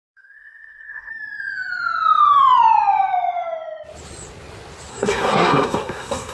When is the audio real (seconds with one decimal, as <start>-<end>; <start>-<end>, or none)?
1.1-4.9